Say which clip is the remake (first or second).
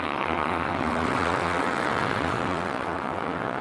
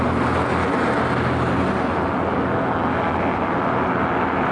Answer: first